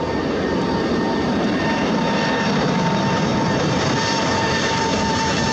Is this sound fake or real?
fake